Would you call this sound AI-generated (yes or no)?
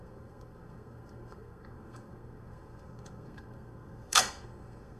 yes